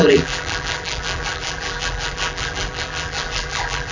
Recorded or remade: remade